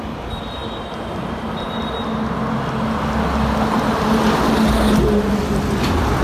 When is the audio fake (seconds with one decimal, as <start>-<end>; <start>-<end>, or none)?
none